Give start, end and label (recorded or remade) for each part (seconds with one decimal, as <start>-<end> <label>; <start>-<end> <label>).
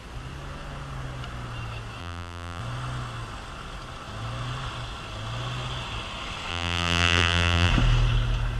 0.0-2.0 recorded; 2.0-2.6 remade; 2.6-6.5 recorded; 6.5-7.7 remade; 7.7-8.6 recorded